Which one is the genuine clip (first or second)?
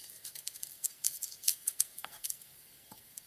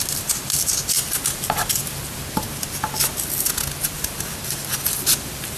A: second